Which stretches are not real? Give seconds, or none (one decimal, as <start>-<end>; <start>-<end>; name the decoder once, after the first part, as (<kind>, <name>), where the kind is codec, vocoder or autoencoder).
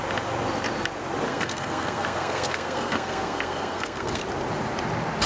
1.3-4.2 (codec, SNAC)